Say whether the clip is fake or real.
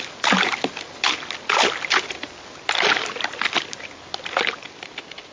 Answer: real